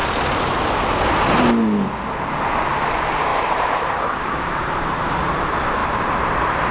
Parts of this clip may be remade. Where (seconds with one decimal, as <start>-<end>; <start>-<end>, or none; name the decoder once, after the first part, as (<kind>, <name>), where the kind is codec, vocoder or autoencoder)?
3.3-4.9 (vocoder, BigVGAN v2); 5.8-6.7